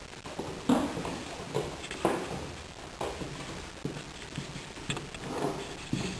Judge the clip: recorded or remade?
recorded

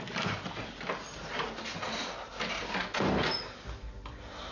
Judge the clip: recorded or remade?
recorded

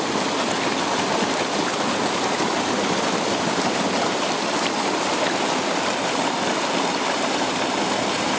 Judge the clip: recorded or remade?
recorded